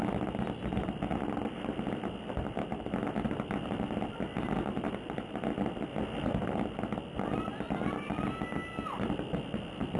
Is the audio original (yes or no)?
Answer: yes